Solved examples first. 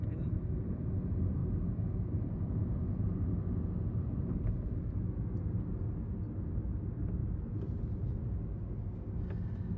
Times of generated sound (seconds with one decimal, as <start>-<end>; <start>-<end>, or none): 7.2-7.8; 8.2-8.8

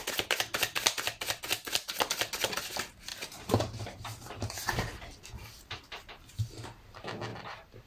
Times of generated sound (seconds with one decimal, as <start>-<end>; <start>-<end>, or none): 3.1-4.5; 7.3-7.9

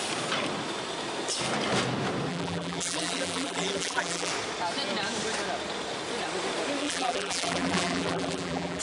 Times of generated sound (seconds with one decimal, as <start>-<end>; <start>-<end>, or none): 2.3-4.3; 6.8-8.8

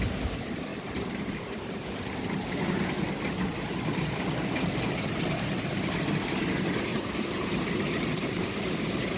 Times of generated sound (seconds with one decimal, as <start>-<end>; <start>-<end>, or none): 0.7-3.2; 6.9-8.5

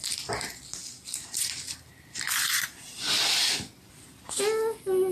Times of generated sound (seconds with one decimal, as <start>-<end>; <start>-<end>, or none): 0.8-3.9

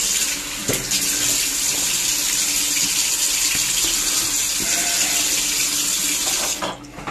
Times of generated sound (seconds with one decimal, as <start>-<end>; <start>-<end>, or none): none

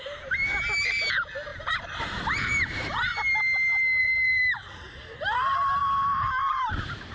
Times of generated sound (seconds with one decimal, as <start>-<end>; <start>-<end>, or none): 0.0-3.1; 4.0-7.1

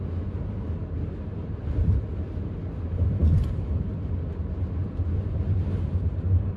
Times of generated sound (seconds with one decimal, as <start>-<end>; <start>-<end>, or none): none